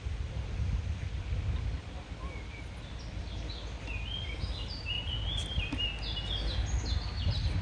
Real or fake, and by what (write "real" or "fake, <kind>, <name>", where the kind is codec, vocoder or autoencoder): real